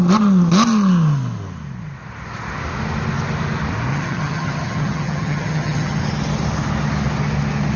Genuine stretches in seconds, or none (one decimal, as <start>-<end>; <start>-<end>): 0.0-3.9; 6.0-7.8